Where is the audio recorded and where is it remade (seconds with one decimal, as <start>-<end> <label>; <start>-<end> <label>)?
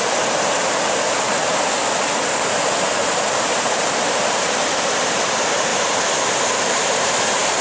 0.0-3.0 recorded; 3.0-5.2 remade; 5.2-5.7 recorded; 5.7-7.6 remade